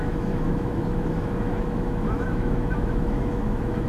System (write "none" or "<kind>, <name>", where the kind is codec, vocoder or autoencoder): autoencoder, DAC-VAE